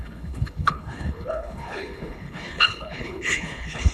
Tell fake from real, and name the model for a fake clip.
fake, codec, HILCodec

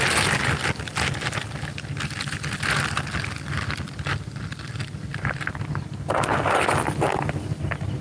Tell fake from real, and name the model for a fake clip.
real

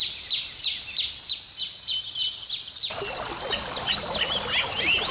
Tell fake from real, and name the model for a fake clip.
real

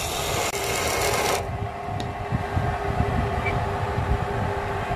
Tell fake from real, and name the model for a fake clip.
real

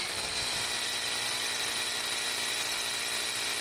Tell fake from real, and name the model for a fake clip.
real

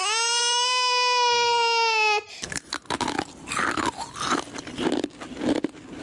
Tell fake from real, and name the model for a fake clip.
real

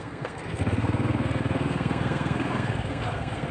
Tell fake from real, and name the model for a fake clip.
fake, codec, SNAC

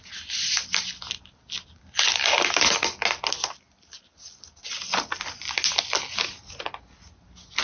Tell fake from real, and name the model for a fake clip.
real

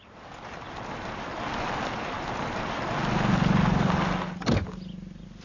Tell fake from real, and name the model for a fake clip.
real